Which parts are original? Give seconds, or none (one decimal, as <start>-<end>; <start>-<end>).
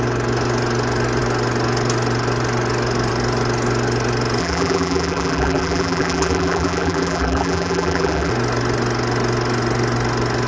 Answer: 0.0-4.4; 8.3-10.5